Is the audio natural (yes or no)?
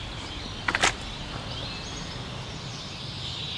yes